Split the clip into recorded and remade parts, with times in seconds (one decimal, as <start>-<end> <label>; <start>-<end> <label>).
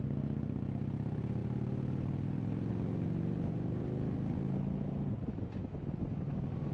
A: 0.0-6.7 recorded